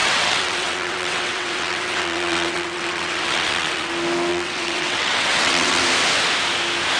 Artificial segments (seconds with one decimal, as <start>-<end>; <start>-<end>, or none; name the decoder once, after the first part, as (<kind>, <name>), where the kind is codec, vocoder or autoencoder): 0.0-3.9 (vocoder, WaveNeXt); 4.3-5.8